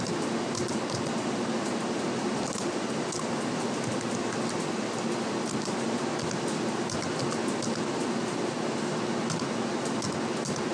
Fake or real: real